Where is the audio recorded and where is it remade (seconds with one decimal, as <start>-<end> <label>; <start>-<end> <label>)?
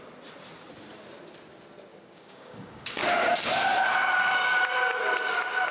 0.0-1.9 recorded; 1.9-3.4 remade; 3.4-4.1 recorded; 4.1-4.6 remade; 4.6-5.7 recorded